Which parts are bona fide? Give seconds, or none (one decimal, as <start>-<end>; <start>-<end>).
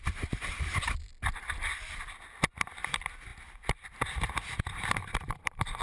1.1-2.5